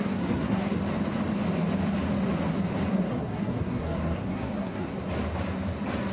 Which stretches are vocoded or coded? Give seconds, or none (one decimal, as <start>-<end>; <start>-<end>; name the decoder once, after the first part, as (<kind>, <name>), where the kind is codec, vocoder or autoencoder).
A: 0.0-0.8 (codec, SNAC); 2.9-4.9